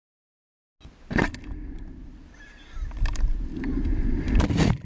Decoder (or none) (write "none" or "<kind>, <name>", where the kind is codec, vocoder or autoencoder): none